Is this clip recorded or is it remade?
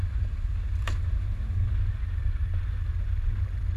recorded